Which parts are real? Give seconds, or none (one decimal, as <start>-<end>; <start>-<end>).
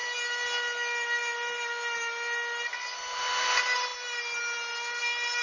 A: 0.0-5.4